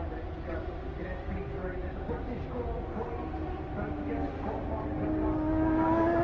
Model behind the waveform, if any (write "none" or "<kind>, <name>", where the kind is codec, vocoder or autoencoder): none